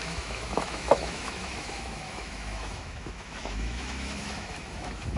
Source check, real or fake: fake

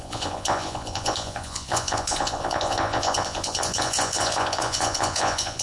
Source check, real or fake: fake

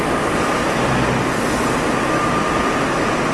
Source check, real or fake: real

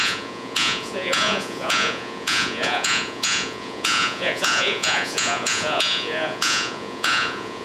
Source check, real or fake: fake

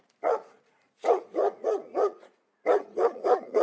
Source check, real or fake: fake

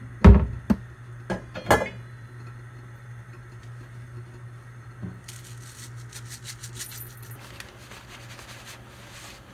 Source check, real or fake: real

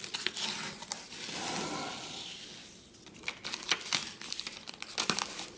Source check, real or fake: real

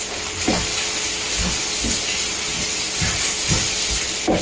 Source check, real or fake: real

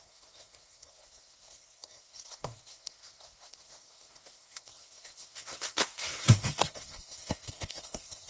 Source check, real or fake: fake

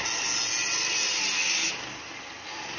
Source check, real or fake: real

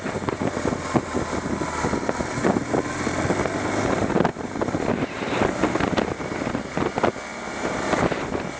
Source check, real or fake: real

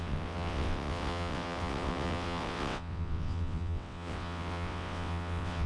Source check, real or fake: fake